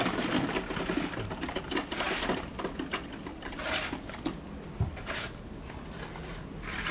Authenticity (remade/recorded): recorded